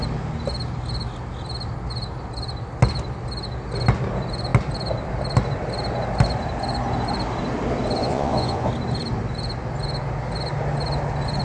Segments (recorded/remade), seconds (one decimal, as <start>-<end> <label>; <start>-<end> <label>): 0.0-8.0 recorded; 8.0-8.7 remade; 8.7-11.4 recorded

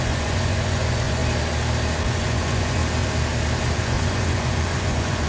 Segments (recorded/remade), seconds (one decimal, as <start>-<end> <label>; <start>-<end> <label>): 0.0-1.2 remade; 1.2-2.1 recorded; 2.1-2.8 remade; 2.8-3.8 recorded; 3.8-5.3 remade

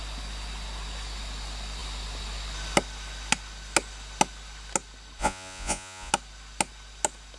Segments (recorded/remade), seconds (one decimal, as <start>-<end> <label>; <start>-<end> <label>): 0.0-5.2 recorded; 5.2-6.1 remade; 6.1-7.4 recorded

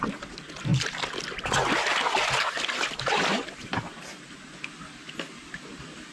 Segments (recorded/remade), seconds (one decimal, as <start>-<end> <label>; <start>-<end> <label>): 0.0-6.1 recorded

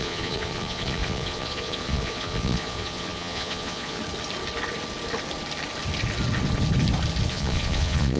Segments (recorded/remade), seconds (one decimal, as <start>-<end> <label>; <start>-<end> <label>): 0.0-4.0 remade; 4.0-7.3 recorded; 7.3-8.2 remade

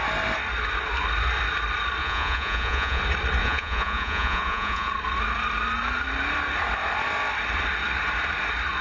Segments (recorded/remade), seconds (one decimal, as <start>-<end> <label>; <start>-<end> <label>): 0.0-2.0 recorded; 2.0-3.0 remade; 3.0-3.4 recorded; 3.4-4.9 remade; 4.9-8.8 recorded

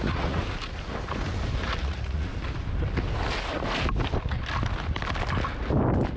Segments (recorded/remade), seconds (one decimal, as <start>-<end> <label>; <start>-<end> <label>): 0.0-0.4 remade; 0.4-1.8 recorded; 1.8-2.3 remade; 2.3-6.2 recorded